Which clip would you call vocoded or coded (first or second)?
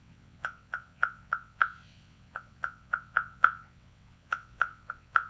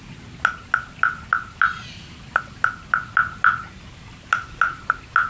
first